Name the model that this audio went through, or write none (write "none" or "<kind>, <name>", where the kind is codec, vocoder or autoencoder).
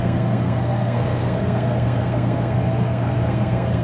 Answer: codec, SNAC